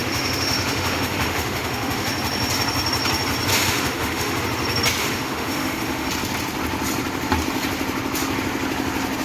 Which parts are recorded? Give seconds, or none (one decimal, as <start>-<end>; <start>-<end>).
2.1-3.5; 4.4-5.0; 6.1-9.2